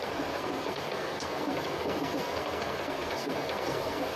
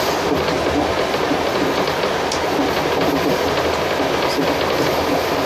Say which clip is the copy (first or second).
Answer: first